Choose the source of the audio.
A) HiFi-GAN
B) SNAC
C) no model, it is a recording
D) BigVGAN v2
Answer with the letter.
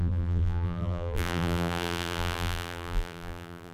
D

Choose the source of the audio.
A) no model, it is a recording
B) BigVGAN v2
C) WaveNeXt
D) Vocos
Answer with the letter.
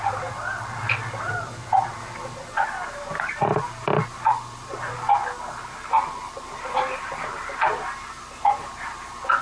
B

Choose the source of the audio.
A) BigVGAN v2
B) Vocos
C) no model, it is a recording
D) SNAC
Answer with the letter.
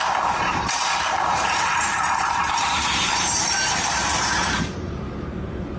A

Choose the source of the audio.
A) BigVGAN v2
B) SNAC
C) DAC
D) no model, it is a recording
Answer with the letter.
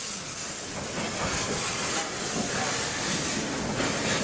A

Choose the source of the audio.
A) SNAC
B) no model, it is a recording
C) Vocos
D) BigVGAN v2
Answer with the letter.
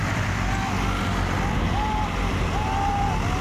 B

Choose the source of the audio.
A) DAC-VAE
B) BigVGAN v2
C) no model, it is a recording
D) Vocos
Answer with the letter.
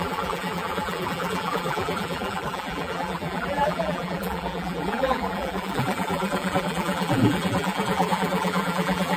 B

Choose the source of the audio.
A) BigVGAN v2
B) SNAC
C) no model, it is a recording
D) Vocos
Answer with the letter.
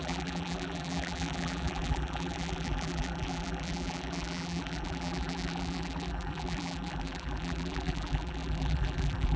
A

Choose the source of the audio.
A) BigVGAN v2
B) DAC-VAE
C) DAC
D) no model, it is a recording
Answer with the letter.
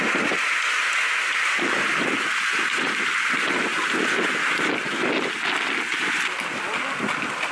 D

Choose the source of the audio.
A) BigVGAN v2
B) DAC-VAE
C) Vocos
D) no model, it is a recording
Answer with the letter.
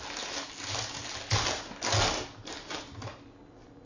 D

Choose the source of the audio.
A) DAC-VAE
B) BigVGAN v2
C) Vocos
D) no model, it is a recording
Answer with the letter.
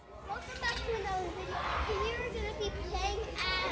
D